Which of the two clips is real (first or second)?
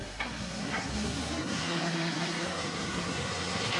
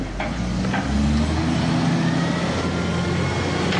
second